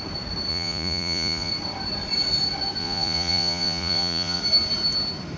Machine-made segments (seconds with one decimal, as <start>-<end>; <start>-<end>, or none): 0.5-1.5; 2.8-4.4